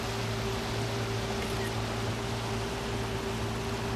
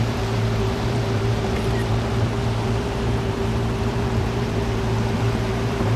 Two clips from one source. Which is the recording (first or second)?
first